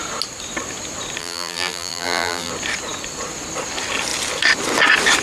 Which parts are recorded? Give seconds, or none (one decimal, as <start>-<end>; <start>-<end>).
0.0-1.2; 2.5-5.2